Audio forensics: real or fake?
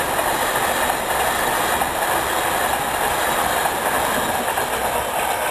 real